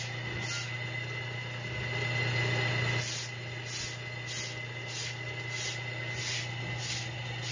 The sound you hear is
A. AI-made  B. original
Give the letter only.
B